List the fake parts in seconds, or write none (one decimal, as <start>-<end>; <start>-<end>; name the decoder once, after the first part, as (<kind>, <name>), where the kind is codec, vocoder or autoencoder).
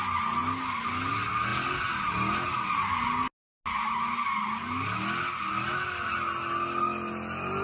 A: none